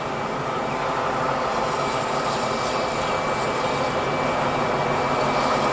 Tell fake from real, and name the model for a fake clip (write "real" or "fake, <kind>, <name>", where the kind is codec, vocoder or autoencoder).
real